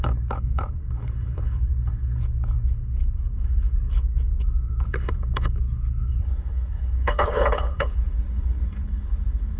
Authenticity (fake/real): fake